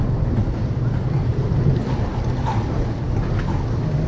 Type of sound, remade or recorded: recorded